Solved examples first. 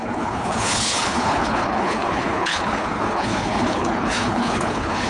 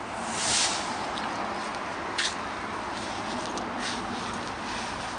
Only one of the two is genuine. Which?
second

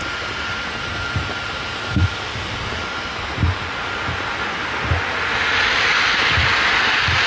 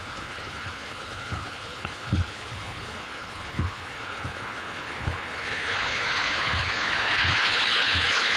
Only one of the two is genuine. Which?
first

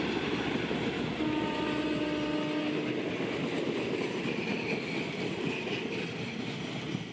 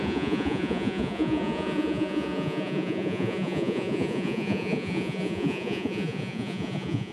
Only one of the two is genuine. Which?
first